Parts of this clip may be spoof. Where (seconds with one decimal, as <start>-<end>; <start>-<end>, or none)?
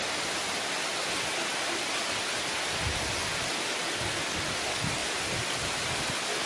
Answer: none